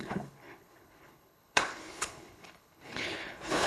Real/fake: fake